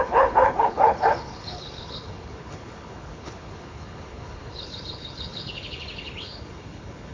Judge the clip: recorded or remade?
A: remade